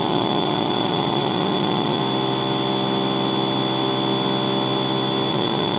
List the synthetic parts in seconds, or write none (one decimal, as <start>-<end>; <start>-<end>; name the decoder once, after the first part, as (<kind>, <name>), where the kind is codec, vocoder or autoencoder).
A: 0.0-2.0 (vocoder, Vocos); 5.3-5.8